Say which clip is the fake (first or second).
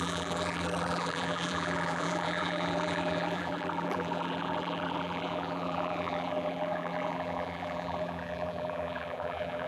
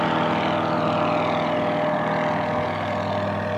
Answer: first